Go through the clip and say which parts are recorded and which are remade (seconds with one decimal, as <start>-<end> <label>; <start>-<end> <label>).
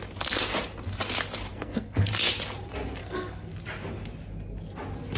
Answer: 0.0-1.5 recorded; 1.5-2.1 remade; 2.1-3.0 recorded; 3.0-3.6 remade; 3.6-5.2 recorded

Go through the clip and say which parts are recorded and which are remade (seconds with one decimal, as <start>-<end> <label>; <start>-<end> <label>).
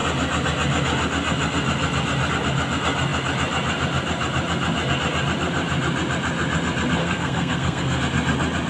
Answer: 0.0-7.0 recorded; 7.0-8.0 remade; 8.0-8.7 recorded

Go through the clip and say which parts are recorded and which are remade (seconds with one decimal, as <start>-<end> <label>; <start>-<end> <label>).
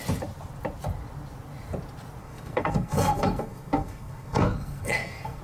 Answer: 0.0-2.2 recorded; 2.2-5.4 remade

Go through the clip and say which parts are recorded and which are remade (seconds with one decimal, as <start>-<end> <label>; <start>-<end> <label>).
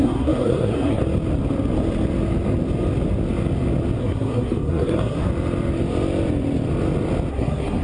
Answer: 0.0-1.0 remade; 1.0-4.0 recorded; 4.0-5.3 remade; 5.3-7.3 recorded; 7.3-7.8 remade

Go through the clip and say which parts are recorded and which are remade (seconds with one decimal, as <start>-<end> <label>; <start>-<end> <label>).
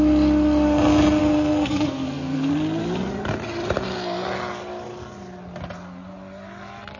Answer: 0.0-1.2 recorded; 1.2-2.5 remade; 2.5-7.0 recorded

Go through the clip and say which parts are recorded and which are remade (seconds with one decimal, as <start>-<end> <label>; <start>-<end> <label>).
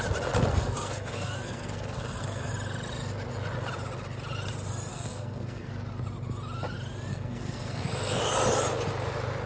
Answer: 0.0-0.5 recorded; 0.5-2.5 remade; 2.5-4.9 recorded; 4.9-5.7 remade; 5.7-7.1 recorded; 7.1-8.2 remade; 8.2-9.5 recorded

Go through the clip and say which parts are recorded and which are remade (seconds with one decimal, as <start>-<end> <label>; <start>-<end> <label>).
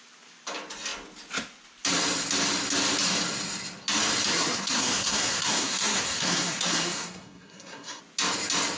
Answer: 0.0-4.3 recorded; 4.3-8.0 remade; 8.0-8.8 recorded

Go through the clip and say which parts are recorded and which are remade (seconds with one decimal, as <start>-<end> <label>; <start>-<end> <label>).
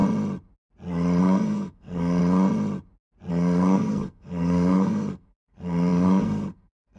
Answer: 0.0-1.2 recorded; 1.2-2.2 remade; 2.2-3.3 recorded; 3.3-7.0 remade